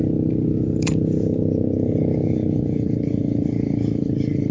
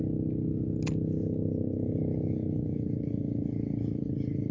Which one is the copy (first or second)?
first